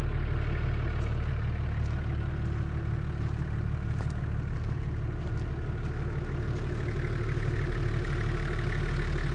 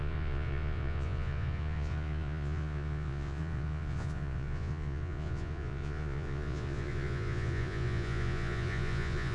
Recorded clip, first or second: first